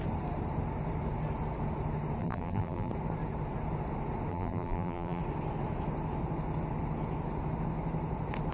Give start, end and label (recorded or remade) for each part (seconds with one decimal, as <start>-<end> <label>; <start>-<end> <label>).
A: 0.0-2.2 recorded; 2.2-2.9 remade; 2.9-4.3 recorded; 4.3-5.2 remade; 5.2-8.5 recorded